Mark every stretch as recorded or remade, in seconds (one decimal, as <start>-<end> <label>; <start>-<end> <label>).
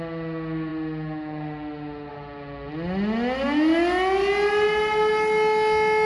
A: 0.0-6.1 recorded